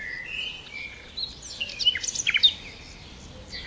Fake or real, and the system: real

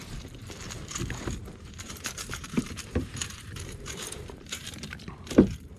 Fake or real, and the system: fake, vocoder, BigVGAN v2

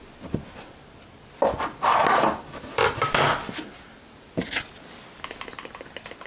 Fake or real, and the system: real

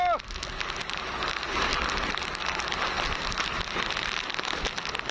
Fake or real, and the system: real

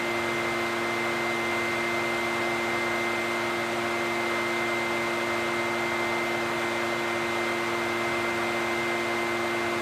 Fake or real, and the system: real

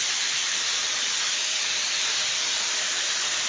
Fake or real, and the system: real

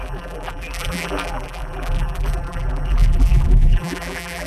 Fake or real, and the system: fake, vocoder, BigVGAN v2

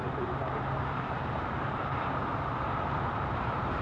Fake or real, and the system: fake, vocoder, BigVGAN v2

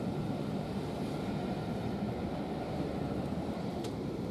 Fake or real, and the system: fake, vocoder, BigVGAN v2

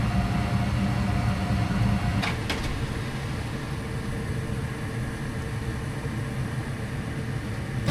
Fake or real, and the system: real